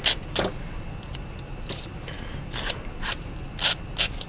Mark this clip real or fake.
real